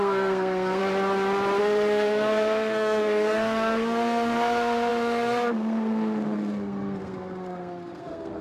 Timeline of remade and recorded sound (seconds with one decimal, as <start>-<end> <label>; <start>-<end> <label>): 0.0-0.8 remade; 0.8-1.6 recorded; 1.6-8.4 remade